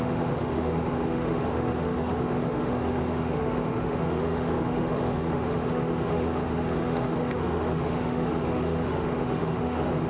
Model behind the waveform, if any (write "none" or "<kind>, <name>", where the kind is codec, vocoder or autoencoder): autoencoder, DAC-VAE